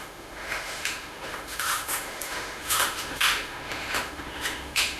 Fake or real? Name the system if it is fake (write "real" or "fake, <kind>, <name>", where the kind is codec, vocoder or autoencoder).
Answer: fake, autoencoder, DAC-VAE